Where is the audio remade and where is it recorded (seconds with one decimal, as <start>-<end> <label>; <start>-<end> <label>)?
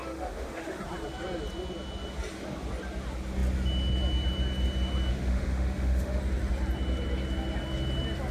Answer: 0.0-0.8 remade; 0.8-5.1 recorded; 5.1-6.2 remade; 6.2-8.3 recorded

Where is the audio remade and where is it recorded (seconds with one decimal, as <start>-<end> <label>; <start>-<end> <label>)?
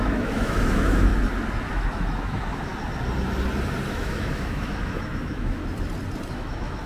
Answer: 0.0-1.1 remade; 1.1-1.7 recorded; 1.7-2.7 remade; 2.7-3.9 recorded; 3.9-5.6 remade; 5.6-6.3 recorded; 6.3-6.9 remade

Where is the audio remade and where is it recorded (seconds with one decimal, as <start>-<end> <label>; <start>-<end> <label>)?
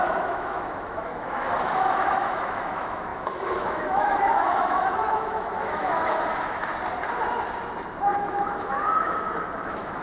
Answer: 0.0-6.7 remade; 6.7-8.1 recorded; 8.1-10.0 remade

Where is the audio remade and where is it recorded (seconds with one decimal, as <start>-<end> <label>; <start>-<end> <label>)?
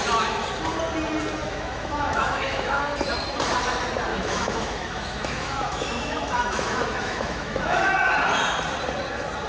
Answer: 0.0-1.4 recorded; 1.4-2.8 remade; 2.8-4.1 recorded; 4.1-7.9 remade; 7.9-9.5 recorded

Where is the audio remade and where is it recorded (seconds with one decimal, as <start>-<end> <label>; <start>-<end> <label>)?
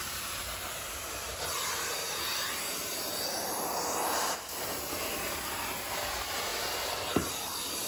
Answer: 0.0-7.9 recorded